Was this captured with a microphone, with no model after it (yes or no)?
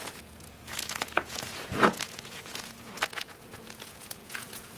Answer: no